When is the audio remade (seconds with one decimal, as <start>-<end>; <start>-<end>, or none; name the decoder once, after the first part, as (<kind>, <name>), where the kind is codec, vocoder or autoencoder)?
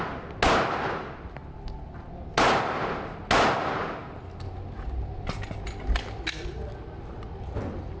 none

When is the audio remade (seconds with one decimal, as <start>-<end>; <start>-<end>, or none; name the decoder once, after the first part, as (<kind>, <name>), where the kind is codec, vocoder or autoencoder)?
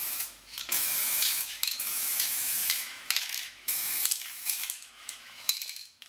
0.0-6.1 (autoencoder, DAC-VAE)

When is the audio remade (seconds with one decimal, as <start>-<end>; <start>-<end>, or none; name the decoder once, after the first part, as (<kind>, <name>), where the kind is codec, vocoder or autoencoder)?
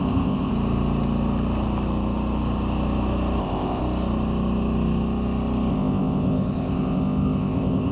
0.0-0.5 (codec, ZipCodec); 3.4-3.8; 5.7-7.9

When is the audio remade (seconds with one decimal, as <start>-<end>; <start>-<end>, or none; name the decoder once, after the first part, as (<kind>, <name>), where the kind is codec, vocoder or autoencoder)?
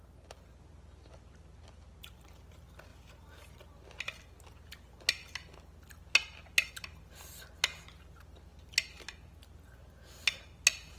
none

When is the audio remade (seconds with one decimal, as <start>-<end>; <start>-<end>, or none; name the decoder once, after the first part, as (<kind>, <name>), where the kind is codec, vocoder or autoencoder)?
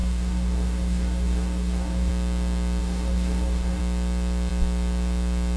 0.0-2.1 (codec, DAC); 2.8-3.8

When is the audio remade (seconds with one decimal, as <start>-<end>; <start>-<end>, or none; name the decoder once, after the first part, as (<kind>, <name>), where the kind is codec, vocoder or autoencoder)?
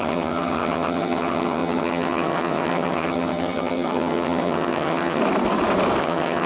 0.0-5.2 (vocoder, HiFi-GAN); 6.0-6.5